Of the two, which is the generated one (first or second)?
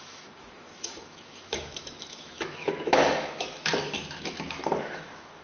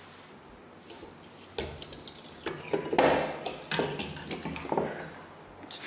first